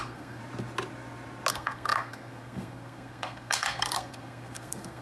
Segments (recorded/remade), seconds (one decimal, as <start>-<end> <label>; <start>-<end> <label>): 0.0-0.4 remade; 0.4-1.5 recorded; 1.5-5.0 remade